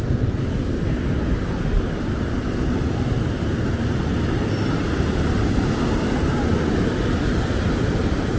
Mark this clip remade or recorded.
recorded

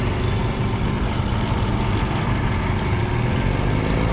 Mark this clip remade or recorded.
recorded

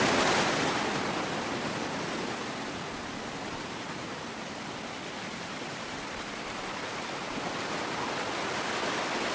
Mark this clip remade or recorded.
recorded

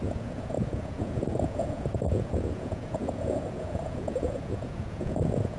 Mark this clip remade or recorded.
remade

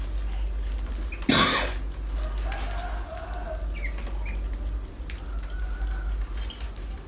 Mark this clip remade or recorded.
recorded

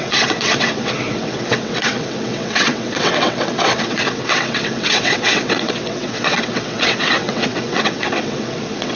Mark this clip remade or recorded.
remade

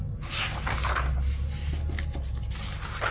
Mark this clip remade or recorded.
recorded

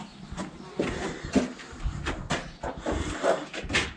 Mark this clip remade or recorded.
recorded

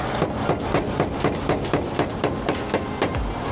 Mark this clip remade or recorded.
recorded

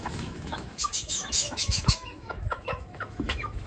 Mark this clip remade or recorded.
remade